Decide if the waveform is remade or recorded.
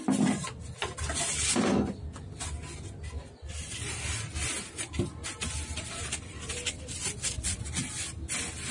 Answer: recorded